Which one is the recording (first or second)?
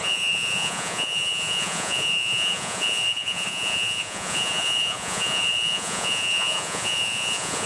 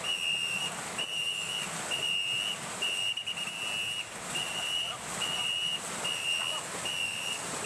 second